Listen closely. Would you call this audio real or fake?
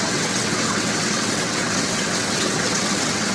fake